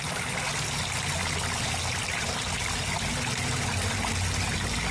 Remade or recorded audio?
recorded